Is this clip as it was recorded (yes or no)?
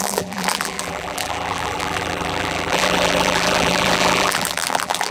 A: no